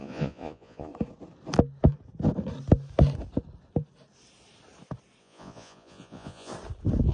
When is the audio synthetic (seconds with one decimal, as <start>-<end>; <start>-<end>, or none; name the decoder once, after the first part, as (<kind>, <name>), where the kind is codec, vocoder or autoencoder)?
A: 0.0-0.9 (vocoder, Vocos); 5.2-6.5